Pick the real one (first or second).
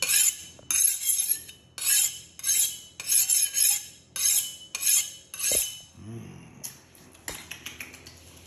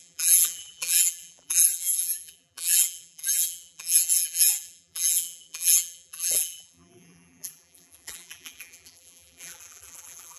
first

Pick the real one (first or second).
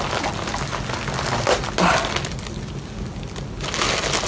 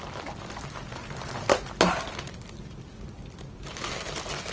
first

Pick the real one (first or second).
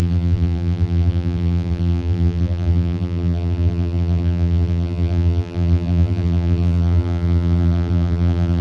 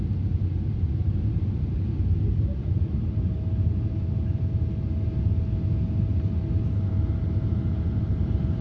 second